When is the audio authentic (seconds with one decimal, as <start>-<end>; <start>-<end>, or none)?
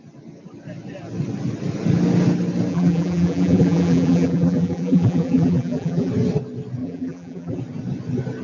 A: 0.0-2.7; 6.1-6.8; 7.6-8.4